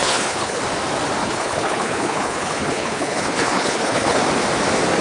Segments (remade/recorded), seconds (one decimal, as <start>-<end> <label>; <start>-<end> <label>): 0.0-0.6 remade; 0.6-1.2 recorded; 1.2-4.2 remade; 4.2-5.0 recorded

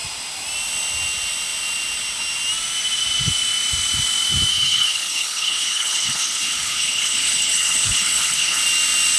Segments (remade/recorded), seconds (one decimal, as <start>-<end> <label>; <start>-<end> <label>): 0.0-4.5 recorded; 4.5-8.6 remade; 8.6-9.2 recorded

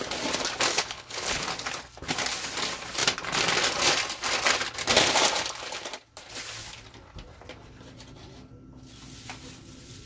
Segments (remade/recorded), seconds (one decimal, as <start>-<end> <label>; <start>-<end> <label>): 0.0-0.7 recorded; 0.7-1.4 remade; 1.4-10.1 recorded

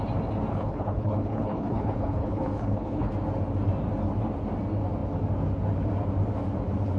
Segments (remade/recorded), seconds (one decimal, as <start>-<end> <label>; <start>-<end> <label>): 0.0-0.5 recorded; 0.5-3.1 remade; 3.1-7.0 recorded

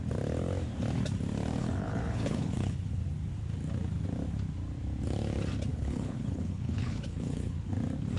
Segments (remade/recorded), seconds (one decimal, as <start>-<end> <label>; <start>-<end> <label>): 0.0-1.6 recorded; 1.6-3.0 remade; 3.0-5.7 recorded; 5.7-7.7 remade; 7.7-8.2 recorded